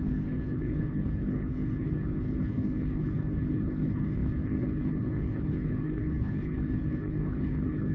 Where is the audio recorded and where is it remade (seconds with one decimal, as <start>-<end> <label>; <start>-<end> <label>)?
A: 0.0-7.9 remade